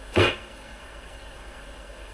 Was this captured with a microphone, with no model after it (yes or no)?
no